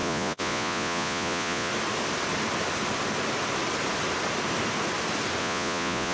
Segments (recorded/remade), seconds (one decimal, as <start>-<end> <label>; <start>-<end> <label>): 0.0-1.7 remade; 1.7-5.4 recorded; 5.4-6.1 remade